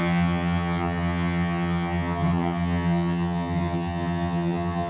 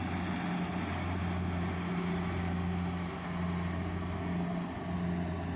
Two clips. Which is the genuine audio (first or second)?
second